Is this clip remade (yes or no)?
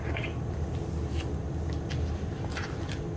no